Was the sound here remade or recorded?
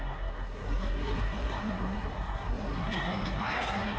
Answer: remade